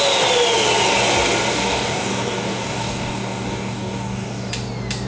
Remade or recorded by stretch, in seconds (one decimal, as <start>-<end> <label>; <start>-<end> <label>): 0.0-1.5 recorded; 1.5-4.5 remade; 4.5-5.1 recorded

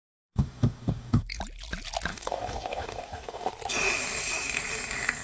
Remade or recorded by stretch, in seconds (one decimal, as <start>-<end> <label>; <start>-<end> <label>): 0.0-1.4 remade; 1.4-2.1 recorded; 2.1-3.5 remade; 3.5-5.2 recorded

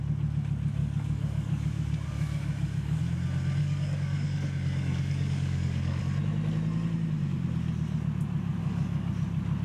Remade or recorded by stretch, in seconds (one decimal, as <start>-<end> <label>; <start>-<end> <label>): 0.0-0.8 recorded; 0.8-3.0 remade; 3.0-3.6 recorded; 3.6-6.0 remade; 6.0-8.6 recorded; 8.6-9.1 remade; 9.1-9.6 recorded

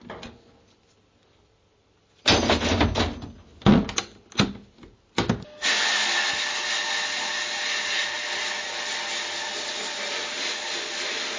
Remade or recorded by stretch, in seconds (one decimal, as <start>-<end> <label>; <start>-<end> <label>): 0.0-11.4 recorded